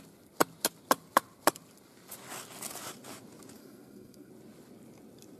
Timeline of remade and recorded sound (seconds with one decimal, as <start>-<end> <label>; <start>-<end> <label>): 0.0-3.6 recorded; 3.6-4.3 remade; 4.3-5.4 recorded